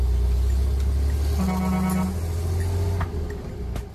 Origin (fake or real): real